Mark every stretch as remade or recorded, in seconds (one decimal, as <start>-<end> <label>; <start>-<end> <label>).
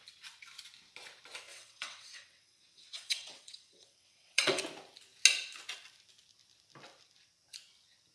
0.0-1.5 recorded; 1.5-4.6 remade; 4.6-8.1 recorded